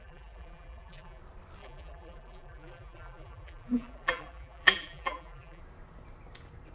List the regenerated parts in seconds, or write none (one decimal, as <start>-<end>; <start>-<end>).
0.0-1.2; 1.6-5.6